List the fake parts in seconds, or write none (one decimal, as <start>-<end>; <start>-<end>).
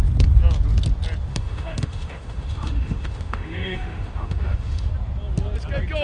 1.3-4.9